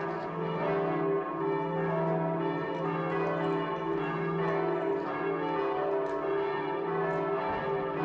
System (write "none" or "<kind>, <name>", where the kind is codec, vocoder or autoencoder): none